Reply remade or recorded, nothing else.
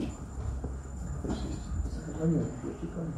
recorded